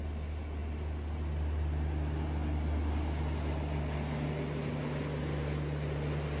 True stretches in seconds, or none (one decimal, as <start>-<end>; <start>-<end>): 0.0-6.4